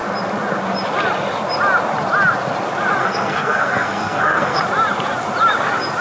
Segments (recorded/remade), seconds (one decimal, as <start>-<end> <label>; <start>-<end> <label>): 0.0-3.0 recorded; 3.0-4.6 remade; 4.6-6.0 recorded